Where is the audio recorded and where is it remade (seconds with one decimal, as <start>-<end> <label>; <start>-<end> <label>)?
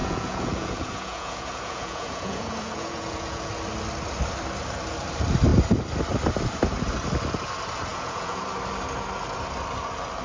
0.0-3.5 remade; 3.5-7.9 recorded; 7.9-8.4 remade; 8.4-10.2 recorded